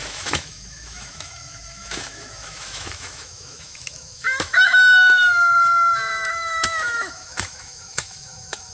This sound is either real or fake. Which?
fake